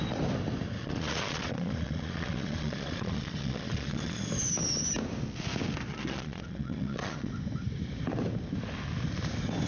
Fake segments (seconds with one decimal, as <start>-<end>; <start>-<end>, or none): 0.8-4.2; 5.9-7.3